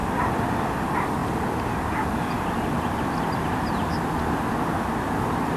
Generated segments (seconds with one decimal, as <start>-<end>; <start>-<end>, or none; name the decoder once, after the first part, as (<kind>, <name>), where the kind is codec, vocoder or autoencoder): none